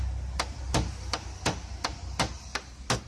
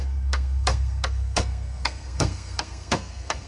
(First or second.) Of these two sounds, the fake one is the second